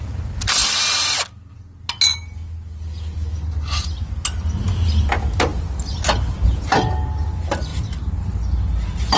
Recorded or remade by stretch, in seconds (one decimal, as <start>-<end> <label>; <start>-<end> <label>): 0.0-9.2 recorded